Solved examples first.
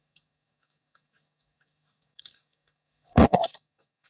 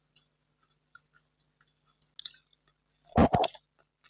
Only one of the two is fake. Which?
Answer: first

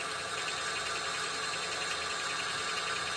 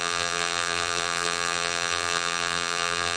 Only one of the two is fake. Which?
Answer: second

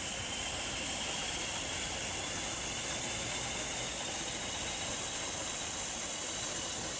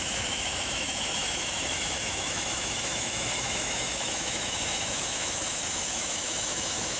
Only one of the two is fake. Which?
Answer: second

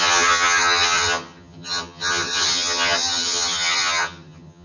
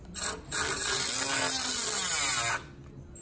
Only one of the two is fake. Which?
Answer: first